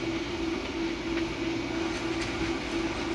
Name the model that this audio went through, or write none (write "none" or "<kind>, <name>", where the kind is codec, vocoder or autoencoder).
none